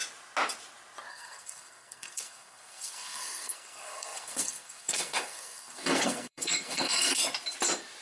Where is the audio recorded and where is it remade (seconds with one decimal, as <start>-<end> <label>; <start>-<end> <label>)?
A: 0.0-1.1 recorded; 1.1-7.2 remade; 7.2-8.0 recorded